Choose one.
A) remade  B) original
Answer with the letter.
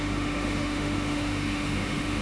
A